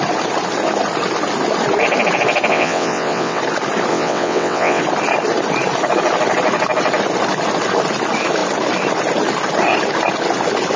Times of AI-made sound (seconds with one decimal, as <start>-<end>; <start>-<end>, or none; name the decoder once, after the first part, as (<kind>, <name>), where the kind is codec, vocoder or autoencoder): 2.5-3.4 (vocoder, WaveNeXt); 3.9-4.8